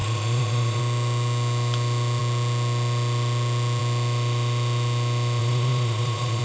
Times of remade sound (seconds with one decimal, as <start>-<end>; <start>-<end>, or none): 0.0-0.8; 5.4-6.4